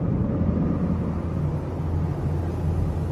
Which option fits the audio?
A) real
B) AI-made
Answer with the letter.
A